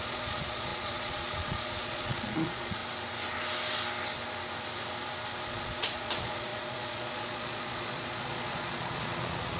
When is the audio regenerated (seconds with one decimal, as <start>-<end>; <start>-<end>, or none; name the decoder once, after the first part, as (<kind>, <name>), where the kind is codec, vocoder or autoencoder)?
0.0-2.8 (vocoder, Vocos); 5.5-9.6

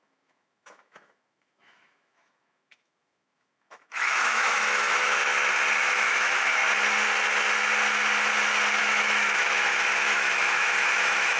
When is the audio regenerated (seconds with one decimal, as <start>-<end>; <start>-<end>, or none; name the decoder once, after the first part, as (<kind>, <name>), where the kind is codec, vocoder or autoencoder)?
0.0-5.3 (autoencoder, DAC-VAE); 5.8-6.6; 8.8-11.4

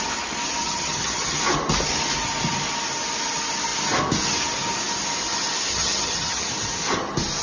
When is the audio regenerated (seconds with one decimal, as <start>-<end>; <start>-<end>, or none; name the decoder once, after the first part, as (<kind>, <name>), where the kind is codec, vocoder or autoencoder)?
0.6-1.4 (vocoder, HiFi-GAN); 5.7-6.5

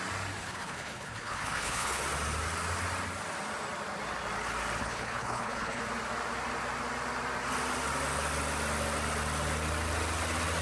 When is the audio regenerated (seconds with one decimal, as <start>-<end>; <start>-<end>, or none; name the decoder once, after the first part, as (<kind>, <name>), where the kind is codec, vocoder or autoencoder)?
0.4-2.0 (codec, HILCodec); 4.8-5.8

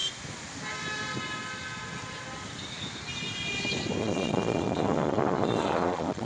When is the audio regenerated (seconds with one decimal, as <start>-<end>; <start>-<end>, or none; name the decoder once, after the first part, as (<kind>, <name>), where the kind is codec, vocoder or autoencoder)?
4.0-6.3 (vocoder, Vocos)

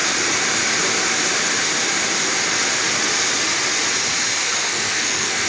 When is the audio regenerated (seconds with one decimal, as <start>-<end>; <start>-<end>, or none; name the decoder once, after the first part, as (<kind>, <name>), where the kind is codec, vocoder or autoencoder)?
4.4-5.5 (codec, SNAC)

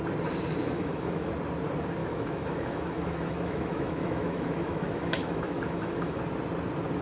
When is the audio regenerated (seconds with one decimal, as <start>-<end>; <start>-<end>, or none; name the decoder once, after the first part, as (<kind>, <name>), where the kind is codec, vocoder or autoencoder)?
0.6-1.3 (autoencoder, DAC-VAE); 2.0-6.2